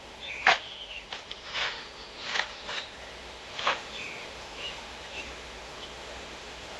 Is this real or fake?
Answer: fake